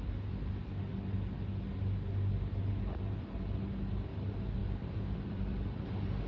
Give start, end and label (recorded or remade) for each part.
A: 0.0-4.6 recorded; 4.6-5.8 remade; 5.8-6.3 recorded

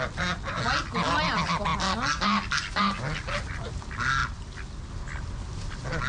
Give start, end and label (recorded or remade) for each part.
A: 0.0-6.1 recorded

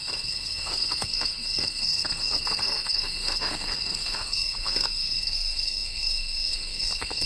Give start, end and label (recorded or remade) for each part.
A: 0.0-7.3 remade

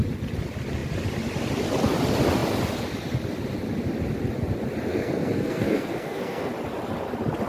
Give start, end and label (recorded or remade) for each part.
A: 0.0-4.9 recorded; 4.9-6.5 remade; 6.5-7.5 recorded

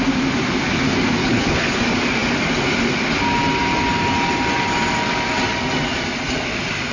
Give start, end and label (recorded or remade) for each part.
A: 0.0-1.2 recorded; 1.2-1.8 remade; 1.8-6.9 recorded

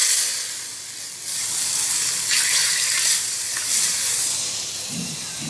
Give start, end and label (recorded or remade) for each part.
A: 0.0-2.6 recorded; 2.6-5.5 remade

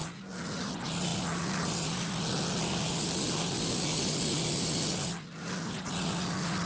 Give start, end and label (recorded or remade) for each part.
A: 0.0-6.7 recorded

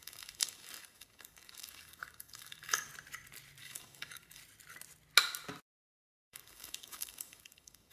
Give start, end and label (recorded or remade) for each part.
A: 0.0-2.9 remade; 2.9-3.6 recorded; 3.6-4.4 remade; 4.4-5.6 recorded; 5.6-7.9 remade